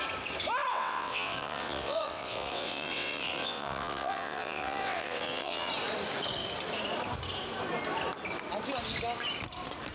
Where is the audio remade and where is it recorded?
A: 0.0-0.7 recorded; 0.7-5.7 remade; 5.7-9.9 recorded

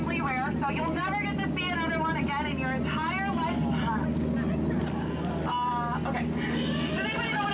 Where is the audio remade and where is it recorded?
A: 0.0-7.5 recorded

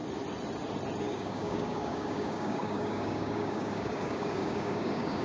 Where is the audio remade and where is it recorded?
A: 0.0-1.0 recorded; 1.0-5.2 remade

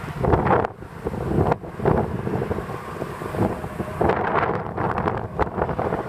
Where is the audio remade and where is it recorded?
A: 0.0-6.1 recorded

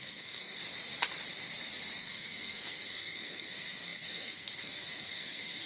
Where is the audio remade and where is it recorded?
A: 0.0-0.6 remade; 0.6-2.0 recorded; 2.0-5.7 remade

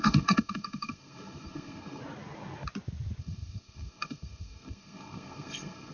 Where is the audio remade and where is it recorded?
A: 0.0-2.0 remade; 2.0-3.2 recorded; 3.2-5.9 remade

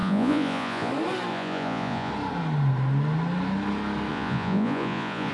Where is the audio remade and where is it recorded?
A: 0.0-0.9 remade; 0.9-1.3 recorded; 1.3-2.1 remade; 2.1-4.1 recorded; 4.1-5.3 remade

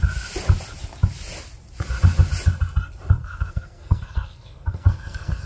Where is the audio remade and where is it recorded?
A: 0.0-3.2 recorded; 3.2-5.5 remade